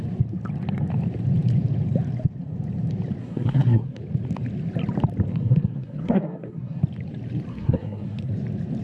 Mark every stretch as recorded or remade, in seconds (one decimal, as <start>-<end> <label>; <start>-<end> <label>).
0.0-3.2 recorded; 3.2-4.0 remade; 4.0-5.3 recorded; 5.3-6.8 remade; 6.8-7.5 recorded; 7.5-8.3 remade; 8.3-8.8 recorded